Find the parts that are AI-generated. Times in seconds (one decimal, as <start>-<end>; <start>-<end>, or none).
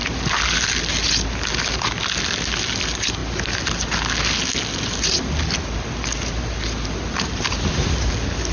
none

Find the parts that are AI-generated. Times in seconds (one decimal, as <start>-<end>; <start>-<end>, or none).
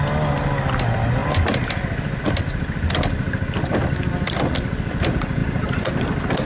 5.4-5.9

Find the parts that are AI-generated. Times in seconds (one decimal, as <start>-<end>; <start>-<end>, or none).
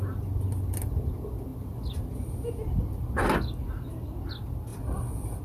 4.7-5.4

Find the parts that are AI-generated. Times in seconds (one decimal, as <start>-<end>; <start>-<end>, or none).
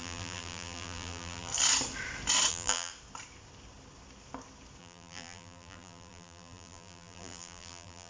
0.0-1.5; 2.5-2.9; 4.8-8.1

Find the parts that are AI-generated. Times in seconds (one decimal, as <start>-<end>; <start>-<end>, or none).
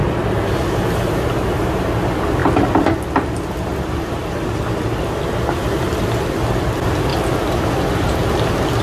none